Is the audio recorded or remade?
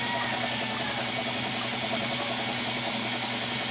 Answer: recorded